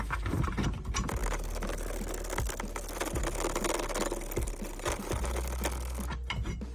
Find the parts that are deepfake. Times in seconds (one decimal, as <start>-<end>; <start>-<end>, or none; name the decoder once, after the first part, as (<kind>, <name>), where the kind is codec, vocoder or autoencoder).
none